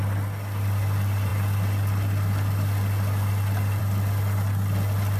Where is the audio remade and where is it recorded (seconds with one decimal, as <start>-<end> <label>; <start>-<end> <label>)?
0.0-5.2 recorded